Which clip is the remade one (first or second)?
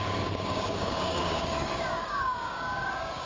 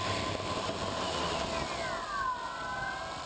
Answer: first